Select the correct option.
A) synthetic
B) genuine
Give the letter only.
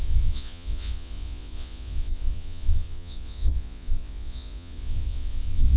A